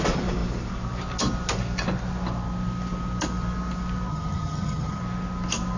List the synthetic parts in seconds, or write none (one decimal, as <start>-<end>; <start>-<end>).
4.1-5.0